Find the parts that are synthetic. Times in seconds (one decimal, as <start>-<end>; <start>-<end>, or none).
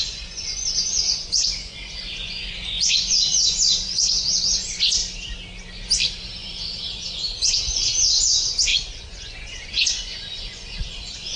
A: 0.0-5.0; 6.4-11.4